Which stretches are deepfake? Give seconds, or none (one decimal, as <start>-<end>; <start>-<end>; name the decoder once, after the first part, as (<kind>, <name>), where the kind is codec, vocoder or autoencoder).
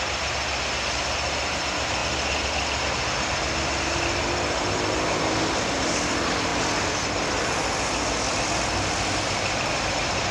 none